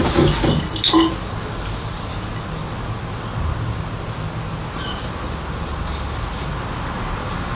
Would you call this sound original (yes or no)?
yes